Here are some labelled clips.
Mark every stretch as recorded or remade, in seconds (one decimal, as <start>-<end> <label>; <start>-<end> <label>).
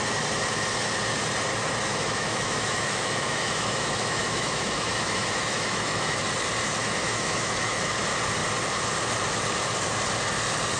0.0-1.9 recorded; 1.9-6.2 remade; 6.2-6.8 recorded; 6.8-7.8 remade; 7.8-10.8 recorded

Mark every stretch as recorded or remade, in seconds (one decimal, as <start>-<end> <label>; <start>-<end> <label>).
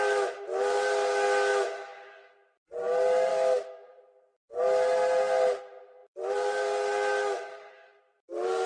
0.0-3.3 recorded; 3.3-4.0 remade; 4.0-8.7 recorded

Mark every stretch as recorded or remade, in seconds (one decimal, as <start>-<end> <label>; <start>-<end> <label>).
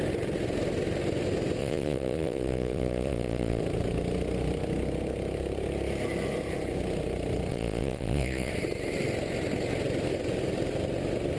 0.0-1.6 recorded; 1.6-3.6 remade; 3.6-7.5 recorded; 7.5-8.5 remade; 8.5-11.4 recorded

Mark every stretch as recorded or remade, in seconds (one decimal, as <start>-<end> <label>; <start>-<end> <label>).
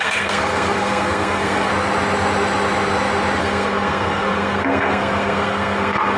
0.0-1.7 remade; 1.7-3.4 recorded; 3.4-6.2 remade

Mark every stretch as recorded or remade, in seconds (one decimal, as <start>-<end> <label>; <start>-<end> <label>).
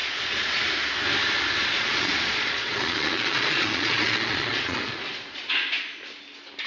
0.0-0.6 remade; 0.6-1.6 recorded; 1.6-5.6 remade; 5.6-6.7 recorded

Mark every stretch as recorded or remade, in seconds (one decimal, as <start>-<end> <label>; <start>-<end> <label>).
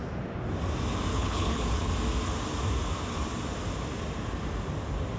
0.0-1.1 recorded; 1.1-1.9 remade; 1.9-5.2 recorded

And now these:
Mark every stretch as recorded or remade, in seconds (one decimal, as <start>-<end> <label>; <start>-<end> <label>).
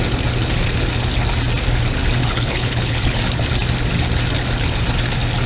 0.0-2.2 recorded; 2.2-3.2 remade; 3.2-5.5 recorded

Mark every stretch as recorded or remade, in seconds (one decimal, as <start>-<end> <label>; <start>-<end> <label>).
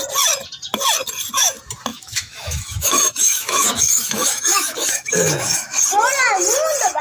0.0-1.9 recorded; 1.9-5.8 remade; 5.8-7.0 recorded